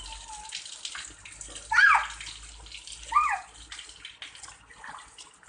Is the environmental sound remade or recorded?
recorded